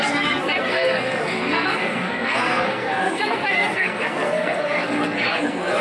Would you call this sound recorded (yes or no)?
no